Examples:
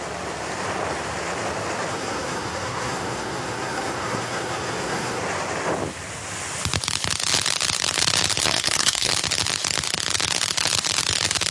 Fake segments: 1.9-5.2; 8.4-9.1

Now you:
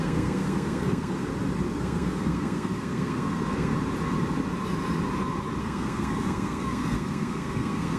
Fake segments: 0.0-1.3; 1.8-3.7; 5.6-8.0

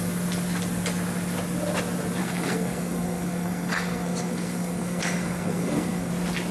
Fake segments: 2.2-6.1

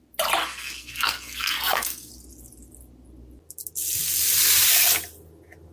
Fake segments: 0.4-2.1

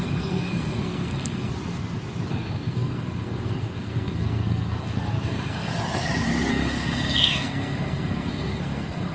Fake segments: 0.0-1.5; 2.3-5.7; 6.5-9.1